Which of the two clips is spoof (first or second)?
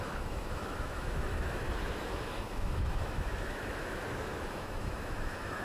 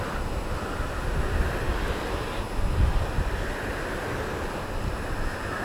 first